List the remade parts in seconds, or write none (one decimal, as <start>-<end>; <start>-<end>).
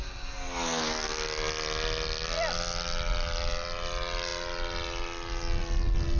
none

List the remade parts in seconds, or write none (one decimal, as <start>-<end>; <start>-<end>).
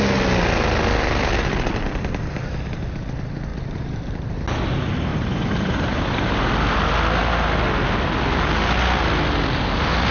3.5-4.4; 5.1-6.8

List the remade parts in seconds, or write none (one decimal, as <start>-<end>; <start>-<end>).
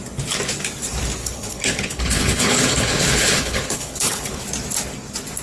1.2-4.4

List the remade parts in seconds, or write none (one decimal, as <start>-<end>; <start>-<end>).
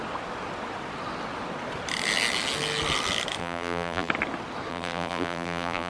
3.4-4.1; 4.7-5.9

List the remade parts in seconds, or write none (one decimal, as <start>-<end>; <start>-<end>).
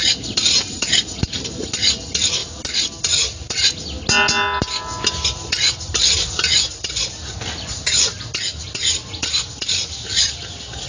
none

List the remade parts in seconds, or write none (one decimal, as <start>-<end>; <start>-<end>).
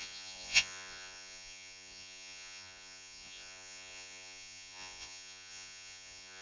0.0-6.4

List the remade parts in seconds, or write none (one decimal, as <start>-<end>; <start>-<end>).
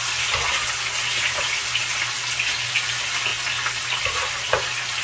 none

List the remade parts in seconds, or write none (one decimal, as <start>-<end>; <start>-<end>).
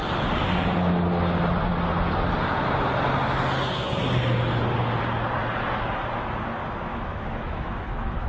6.9-8.3